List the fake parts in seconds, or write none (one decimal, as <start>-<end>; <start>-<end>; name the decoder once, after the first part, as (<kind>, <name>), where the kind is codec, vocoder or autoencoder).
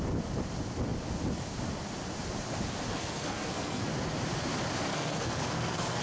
2.9-3.9 (codec, SNAC); 4.9-6.0